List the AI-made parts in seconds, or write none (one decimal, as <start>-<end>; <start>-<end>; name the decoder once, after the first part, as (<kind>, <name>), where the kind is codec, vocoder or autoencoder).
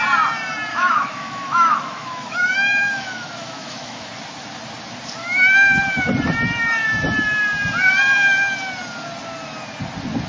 0.7-4.1 (autoencoder, DAC-VAE); 5.2-5.8